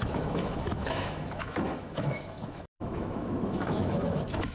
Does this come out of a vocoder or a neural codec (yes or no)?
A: yes